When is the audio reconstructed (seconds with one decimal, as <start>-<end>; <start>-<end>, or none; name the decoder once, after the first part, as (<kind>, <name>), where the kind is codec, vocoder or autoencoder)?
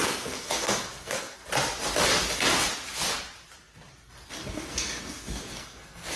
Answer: 0.0-1.4 (codec, SNAC); 4.3-6.2